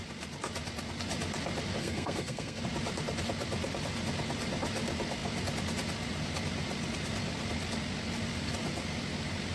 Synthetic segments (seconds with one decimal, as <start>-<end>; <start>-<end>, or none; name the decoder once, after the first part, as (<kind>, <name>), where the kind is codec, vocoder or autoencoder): 1.8-2.6 (codec, SNAC)